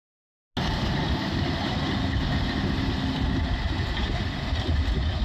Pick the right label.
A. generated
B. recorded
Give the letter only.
B